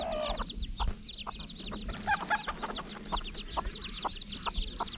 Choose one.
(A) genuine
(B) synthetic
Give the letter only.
A